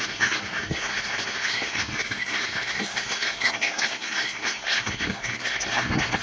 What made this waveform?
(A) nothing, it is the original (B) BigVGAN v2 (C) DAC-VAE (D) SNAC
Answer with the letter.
D